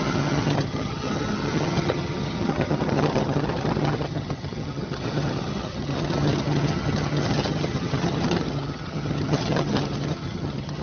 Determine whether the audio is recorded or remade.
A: remade